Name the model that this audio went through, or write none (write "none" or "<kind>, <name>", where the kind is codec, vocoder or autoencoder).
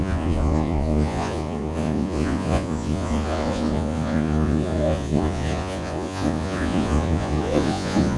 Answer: vocoder, Vocos